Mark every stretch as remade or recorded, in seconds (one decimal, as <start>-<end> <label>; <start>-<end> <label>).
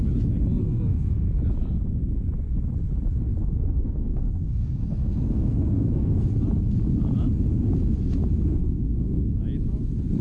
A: 0.0-0.6 recorded; 0.6-1.3 remade; 1.3-3.4 recorded; 3.4-6.3 remade; 6.3-8.5 recorded; 8.5-9.4 remade; 9.4-10.2 recorded